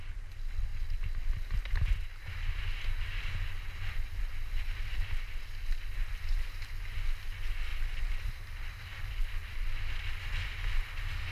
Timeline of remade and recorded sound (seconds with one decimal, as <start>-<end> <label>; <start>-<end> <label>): 0.0-7.7 recorded; 7.7-8.7 remade; 8.7-11.3 recorded